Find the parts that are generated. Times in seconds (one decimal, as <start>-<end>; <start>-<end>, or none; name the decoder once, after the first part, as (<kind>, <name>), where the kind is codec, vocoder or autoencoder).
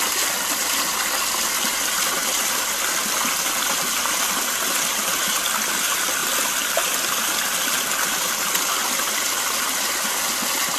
none